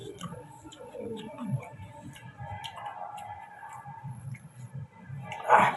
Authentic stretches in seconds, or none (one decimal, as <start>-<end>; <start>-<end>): 1.6-4.1; 4.7-5.8